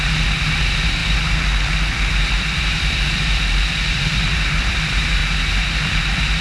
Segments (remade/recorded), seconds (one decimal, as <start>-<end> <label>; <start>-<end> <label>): 0.0-5.2 remade; 5.2-5.7 recorded; 5.7-6.4 remade